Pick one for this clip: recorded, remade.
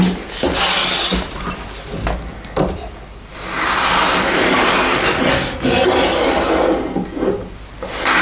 recorded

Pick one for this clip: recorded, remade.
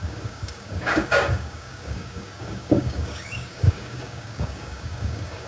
remade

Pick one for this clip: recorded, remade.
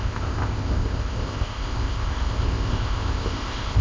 remade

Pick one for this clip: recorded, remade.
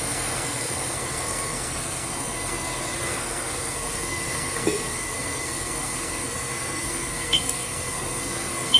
remade